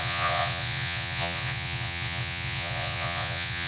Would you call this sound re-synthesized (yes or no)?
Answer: yes